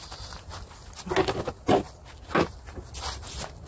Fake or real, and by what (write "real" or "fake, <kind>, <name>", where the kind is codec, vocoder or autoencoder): real